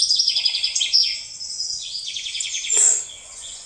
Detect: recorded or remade remade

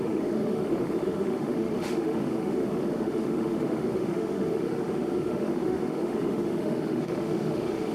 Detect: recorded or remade remade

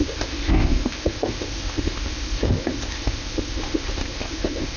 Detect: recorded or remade remade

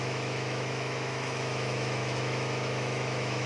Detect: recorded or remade remade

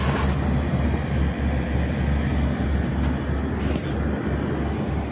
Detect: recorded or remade recorded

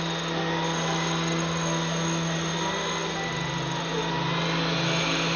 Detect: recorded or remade recorded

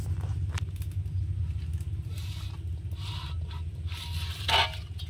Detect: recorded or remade recorded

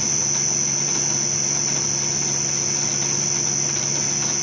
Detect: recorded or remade recorded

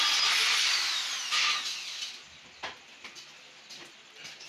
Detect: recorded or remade recorded